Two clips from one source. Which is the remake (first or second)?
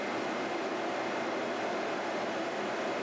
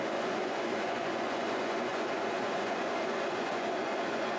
second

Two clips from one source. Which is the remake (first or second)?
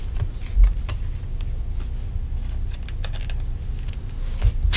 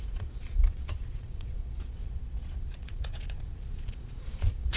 second